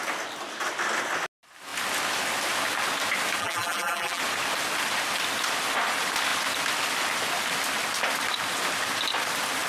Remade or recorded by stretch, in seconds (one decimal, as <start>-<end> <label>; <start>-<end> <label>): 0.0-3.4 recorded; 3.4-4.2 remade; 4.2-9.7 recorded